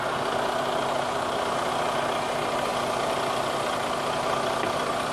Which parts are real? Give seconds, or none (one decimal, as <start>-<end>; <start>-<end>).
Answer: 0.0-5.1

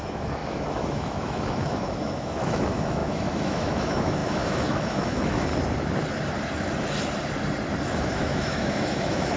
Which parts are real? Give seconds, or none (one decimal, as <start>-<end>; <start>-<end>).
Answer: 5.5-8.0

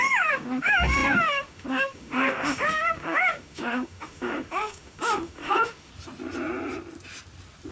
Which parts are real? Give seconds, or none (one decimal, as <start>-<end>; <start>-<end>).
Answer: 5.9-7.7

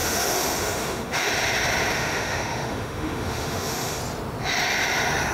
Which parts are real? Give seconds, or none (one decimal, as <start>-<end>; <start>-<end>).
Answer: 1.3-1.9; 4.0-5.3